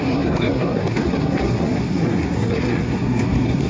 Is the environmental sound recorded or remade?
remade